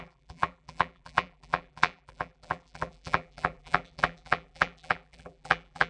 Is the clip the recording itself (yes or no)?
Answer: no